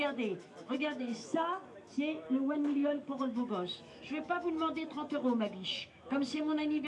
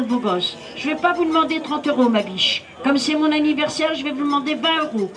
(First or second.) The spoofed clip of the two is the first